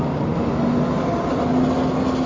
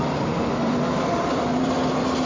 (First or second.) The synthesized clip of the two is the second